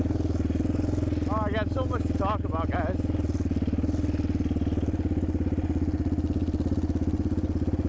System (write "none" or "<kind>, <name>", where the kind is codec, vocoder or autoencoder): none